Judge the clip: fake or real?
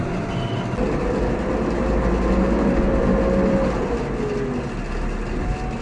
real